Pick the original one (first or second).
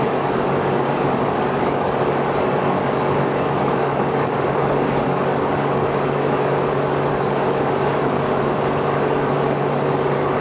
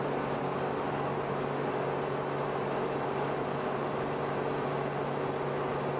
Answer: second